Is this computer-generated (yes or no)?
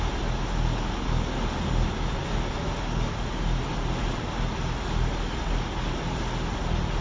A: no